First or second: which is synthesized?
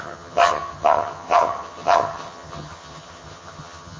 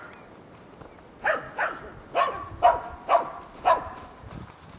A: first